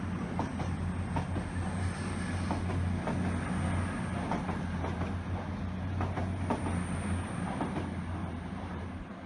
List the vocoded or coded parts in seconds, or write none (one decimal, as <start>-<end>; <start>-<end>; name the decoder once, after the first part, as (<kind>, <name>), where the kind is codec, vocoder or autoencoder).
8.2-9.3 (vocoder, BigVGAN v2)